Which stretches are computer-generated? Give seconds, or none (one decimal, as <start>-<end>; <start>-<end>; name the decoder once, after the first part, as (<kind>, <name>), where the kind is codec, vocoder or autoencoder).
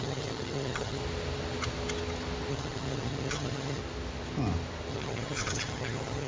0.0-1.0 (vocoder, HiFi-GAN); 2.5-3.8; 4.9-6.3